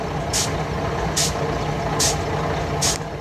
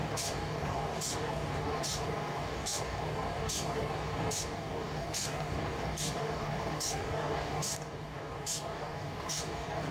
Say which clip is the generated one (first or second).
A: second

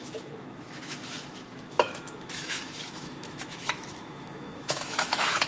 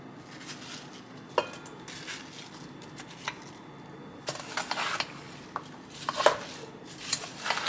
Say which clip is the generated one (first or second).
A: first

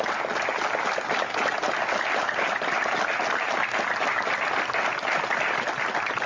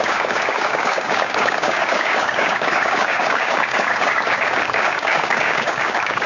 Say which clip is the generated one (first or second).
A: second